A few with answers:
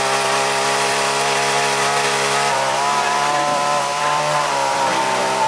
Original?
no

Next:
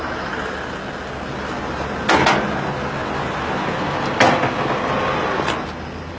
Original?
yes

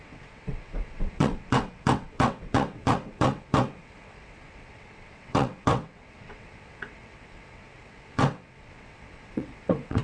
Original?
no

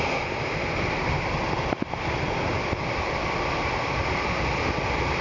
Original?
no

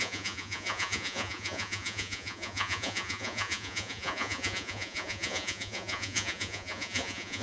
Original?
no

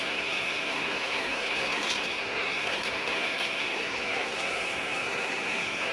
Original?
no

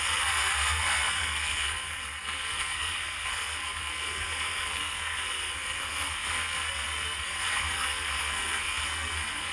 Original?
no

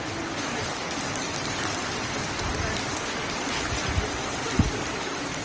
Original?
yes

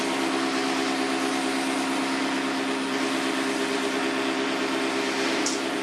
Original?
yes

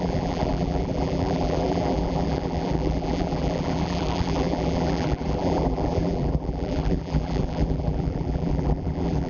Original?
no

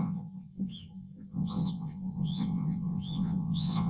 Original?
no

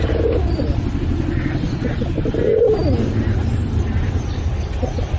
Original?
yes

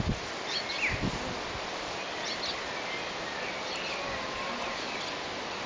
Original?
yes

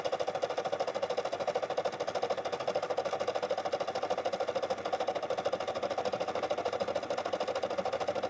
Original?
yes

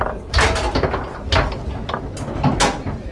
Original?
yes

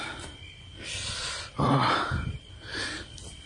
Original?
yes